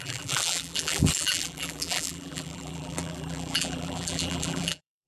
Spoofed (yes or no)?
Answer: yes